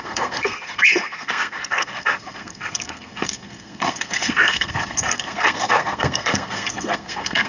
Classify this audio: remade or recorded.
remade